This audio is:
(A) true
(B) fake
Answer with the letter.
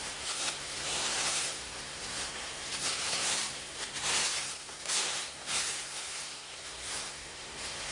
B